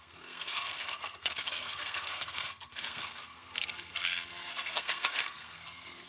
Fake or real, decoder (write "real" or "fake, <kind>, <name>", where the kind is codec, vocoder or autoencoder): fake, codec, SNAC